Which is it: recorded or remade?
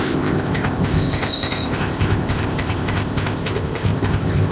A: remade